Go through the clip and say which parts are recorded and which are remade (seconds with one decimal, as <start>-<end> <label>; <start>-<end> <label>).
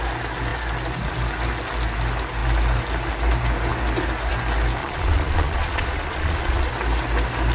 0.0-4.8 recorded; 4.8-6.7 remade; 6.7-7.5 recorded